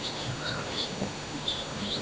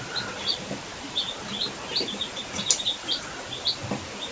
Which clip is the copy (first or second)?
first